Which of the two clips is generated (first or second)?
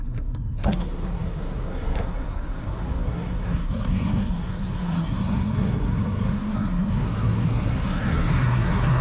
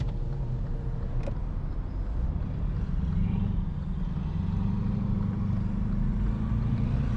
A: first